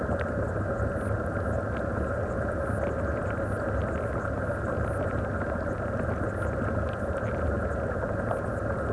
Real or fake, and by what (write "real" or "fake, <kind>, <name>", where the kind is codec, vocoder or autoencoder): real